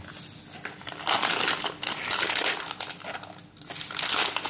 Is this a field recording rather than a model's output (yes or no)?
yes